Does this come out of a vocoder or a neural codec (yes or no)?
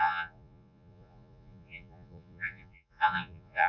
yes